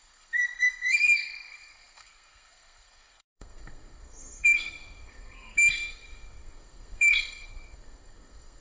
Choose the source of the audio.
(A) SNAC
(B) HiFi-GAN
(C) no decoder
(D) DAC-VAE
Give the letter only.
A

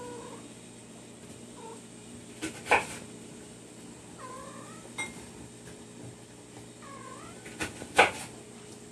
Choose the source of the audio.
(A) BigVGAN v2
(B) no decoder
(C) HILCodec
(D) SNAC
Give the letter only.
B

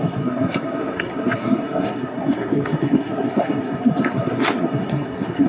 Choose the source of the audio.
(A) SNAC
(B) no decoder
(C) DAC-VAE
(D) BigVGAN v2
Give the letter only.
A